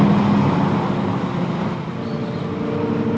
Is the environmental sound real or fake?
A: real